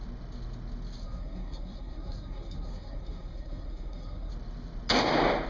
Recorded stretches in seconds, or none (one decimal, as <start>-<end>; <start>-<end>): 0.0-1.0; 4.3-5.5